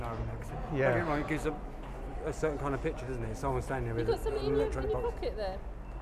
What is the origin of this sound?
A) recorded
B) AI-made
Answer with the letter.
A